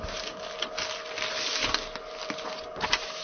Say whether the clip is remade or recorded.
recorded